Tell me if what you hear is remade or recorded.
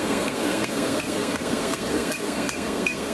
remade